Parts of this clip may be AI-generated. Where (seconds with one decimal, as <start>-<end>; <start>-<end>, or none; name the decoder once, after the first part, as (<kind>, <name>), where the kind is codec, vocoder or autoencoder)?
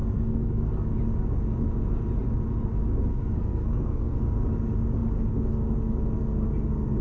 0.0-0.7 (codec, SNAC); 3.1-4.2